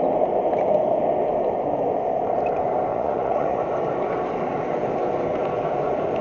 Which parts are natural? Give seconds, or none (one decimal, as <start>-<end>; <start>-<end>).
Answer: 0.0-2.9; 3.6-6.2